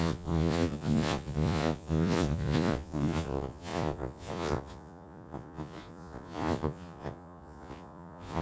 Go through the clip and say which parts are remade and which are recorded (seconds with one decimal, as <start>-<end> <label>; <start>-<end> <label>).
0.0-8.4 remade